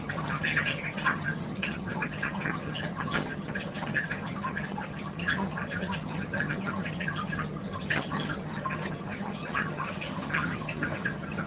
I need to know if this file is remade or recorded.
remade